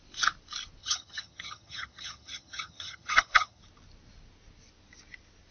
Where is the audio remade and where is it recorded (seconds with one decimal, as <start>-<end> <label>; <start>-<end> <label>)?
0.0-0.8 recorded; 0.8-3.6 remade; 3.6-5.5 recorded